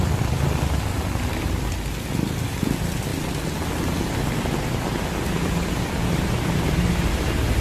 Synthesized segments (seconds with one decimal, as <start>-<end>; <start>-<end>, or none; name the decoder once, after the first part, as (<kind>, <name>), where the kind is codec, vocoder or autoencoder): none

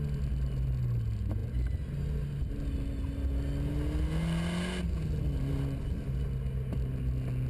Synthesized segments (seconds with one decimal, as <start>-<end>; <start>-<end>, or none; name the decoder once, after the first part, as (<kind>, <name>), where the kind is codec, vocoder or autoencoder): none